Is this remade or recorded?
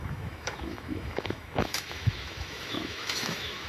remade